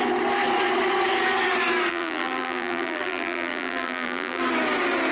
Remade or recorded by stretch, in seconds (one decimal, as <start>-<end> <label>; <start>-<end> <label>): 0.0-1.9 recorded; 1.9-4.4 remade; 4.4-5.1 recorded